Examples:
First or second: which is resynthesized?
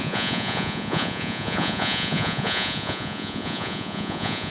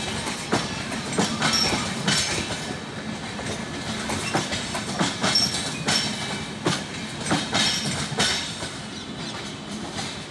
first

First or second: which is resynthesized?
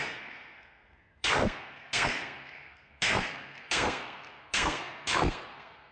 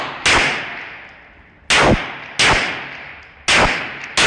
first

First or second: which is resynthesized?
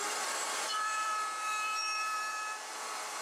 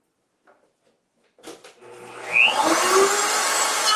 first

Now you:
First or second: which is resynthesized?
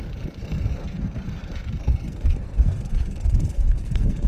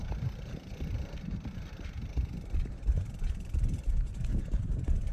first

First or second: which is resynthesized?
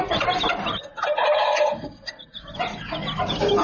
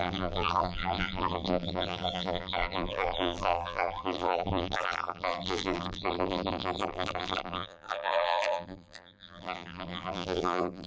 second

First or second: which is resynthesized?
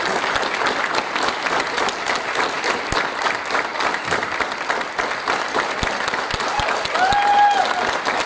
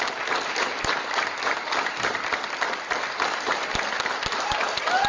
second